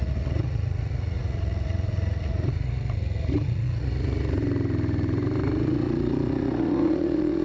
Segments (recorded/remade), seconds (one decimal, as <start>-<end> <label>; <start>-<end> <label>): 0.0-4.4 remade; 4.4-5.4 recorded; 5.4-7.4 remade